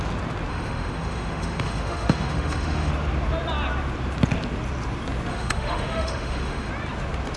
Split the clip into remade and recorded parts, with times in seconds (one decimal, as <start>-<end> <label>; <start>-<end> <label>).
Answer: 0.0-0.5 recorded; 0.5-2.9 remade; 2.9-5.3 recorded; 5.3-6.7 remade; 6.7-7.4 recorded